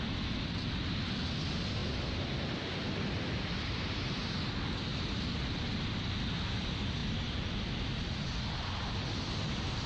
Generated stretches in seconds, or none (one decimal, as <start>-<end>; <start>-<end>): none